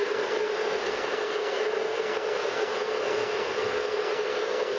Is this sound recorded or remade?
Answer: remade